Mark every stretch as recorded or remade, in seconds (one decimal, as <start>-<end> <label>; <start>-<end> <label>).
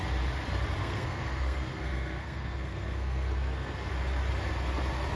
0.0-0.8 recorded; 0.8-3.9 remade; 3.9-5.2 recorded